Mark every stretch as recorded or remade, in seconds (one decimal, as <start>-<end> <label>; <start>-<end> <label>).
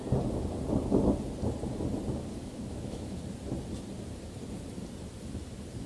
0.0-2.4 recorded; 2.4-3.2 remade; 3.2-5.9 recorded